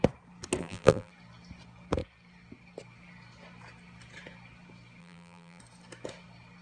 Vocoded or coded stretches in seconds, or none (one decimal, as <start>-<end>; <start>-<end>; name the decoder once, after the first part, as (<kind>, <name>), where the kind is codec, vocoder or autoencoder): 0.6-1.1 (vocoder, BigVGAN v2); 5.0-5.6